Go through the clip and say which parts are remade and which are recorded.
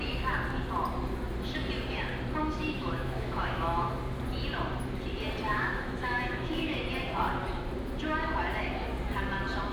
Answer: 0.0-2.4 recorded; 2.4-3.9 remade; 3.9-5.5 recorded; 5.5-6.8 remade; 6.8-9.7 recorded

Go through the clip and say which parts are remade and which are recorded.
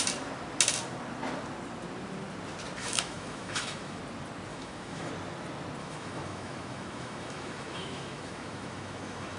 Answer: 0.0-2.8 recorded; 2.8-4.0 remade; 4.0-4.5 recorded; 4.5-5.1 remade; 5.1-5.8 recorded; 5.8-9.4 remade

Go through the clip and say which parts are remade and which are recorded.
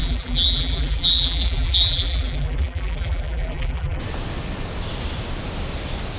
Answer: 0.0-4.0 remade; 4.0-6.2 recorded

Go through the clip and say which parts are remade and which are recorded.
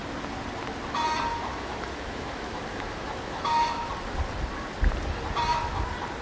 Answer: 0.0-1.3 recorded; 1.3-3.9 remade; 3.9-6.2 recorded